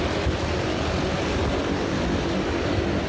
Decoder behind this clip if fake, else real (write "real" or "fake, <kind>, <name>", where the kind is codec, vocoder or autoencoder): real